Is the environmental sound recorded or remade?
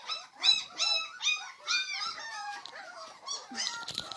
recorded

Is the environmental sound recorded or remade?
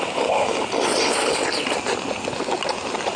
recorded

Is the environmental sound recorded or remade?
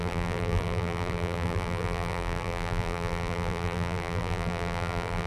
remade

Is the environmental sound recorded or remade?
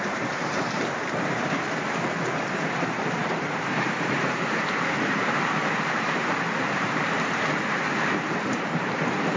remade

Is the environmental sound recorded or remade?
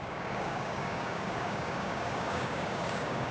remade